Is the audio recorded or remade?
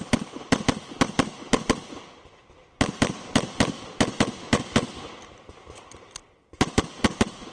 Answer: recorded